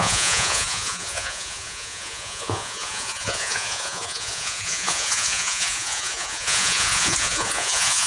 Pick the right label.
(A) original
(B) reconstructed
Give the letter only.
B